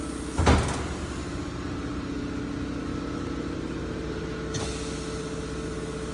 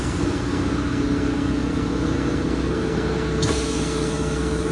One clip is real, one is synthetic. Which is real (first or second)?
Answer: first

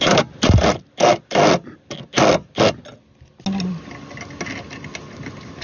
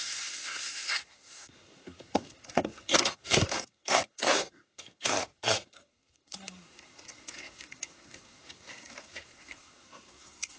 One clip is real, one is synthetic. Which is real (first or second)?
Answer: first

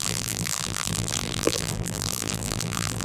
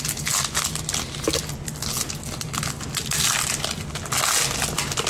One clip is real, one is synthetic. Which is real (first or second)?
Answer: second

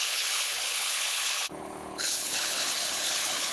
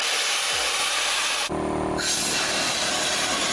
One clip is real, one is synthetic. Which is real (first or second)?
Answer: second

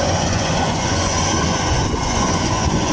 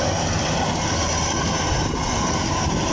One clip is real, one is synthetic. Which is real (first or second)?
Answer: second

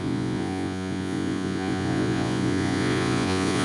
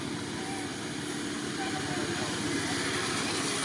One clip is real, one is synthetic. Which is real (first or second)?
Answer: second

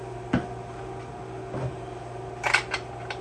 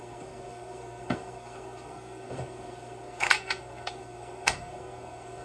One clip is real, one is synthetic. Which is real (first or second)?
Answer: first